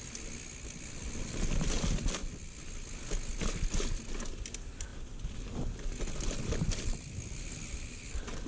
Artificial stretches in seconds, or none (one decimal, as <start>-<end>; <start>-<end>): none